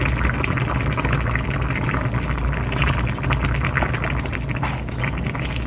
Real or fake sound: real